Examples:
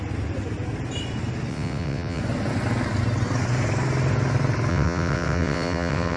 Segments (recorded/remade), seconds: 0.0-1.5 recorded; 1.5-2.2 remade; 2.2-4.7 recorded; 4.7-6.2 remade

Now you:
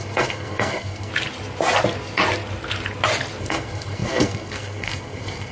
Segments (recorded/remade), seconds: 0.0-1.1 remade; 1.1-3.4 recorded; 3.4-5.5 remade

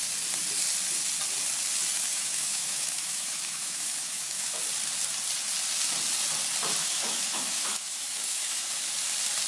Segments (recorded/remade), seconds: 0.0-2.1 recorded; 2.1-4.6 remade; 4.6-6.8 recorded; 6.8-8.8 remade; 8.8-9.5 recorded

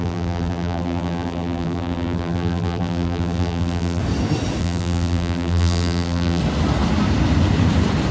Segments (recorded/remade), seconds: 0.0-4.0 remade; 4.0-4.6 recorded; 4.6-6.4 remade; 6.4-8.1 recorded

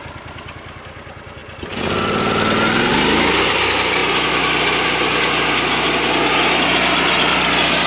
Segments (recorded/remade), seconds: 0.0-7.9 recorded

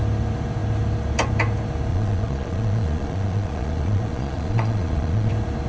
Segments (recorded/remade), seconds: 0.0-1.9 recorded; 1.9-5.3 remade; 5.3-5.7 recorded

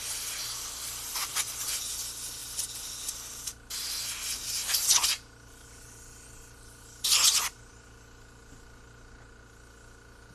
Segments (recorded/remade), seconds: 0.0-10.3 recorded

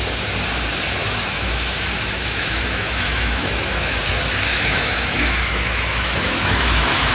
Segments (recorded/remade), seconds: 0.0-1.0 recorded; 1.0-4.0 remade; 4.0-4.5 recorded; 4.5-7.1 remade